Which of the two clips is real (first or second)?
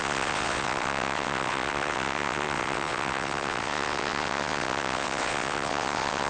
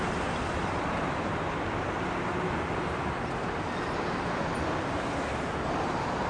second